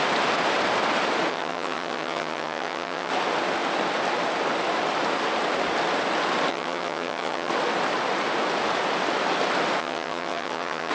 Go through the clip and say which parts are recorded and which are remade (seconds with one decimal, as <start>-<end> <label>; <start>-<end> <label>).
0.0-1.3 recorded; 1.3-3.1 remade; 3.1-6.5 recorded; 6.5-7.5 remade; 7.5-9.8 recorded; 9.8-10.9 remade